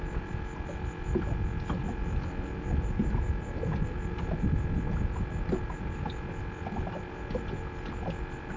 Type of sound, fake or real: real